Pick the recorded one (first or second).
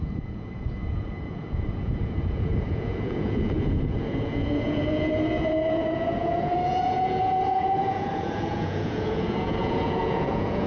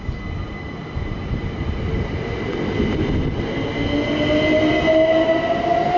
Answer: second